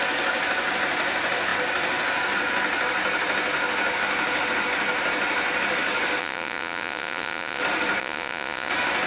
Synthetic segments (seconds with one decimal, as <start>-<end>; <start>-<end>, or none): 6.2-7.6; 8.0-8.7